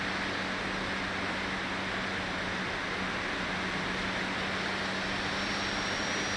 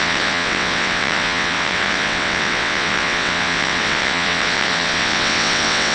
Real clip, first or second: first